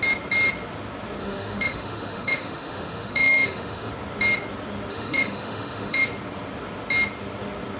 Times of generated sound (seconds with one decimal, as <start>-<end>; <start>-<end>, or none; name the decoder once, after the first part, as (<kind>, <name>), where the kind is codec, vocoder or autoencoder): 1.2-3.9 (autoencoder, DAC-VAE); 4.9-6.1